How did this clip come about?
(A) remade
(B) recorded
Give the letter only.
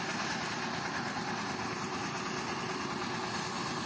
B